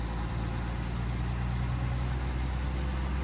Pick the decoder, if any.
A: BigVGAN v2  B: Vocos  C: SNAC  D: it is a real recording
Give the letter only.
D